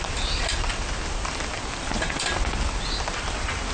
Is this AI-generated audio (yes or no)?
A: no